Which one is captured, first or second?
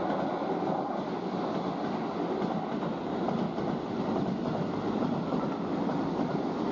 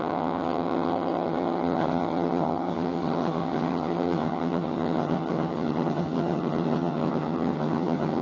first